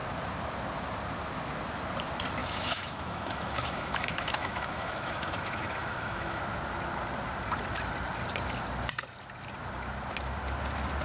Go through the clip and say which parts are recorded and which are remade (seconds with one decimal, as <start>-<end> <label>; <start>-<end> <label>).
0.0-2.4 recorded; 2.4-6.4 remade; 6.4-11.0 recorded